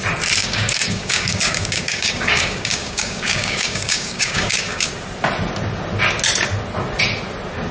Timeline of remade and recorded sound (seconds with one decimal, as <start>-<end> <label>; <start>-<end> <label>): 0.0-0.4 recorded; 0.4-4.9 remade; 4.9-7.7 recorded